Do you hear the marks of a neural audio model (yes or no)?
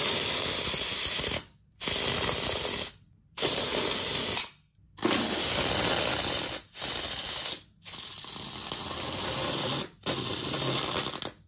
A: no